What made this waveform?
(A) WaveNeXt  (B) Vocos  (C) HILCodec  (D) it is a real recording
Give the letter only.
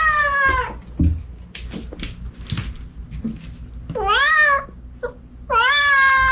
D